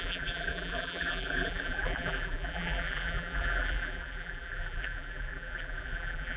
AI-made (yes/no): yes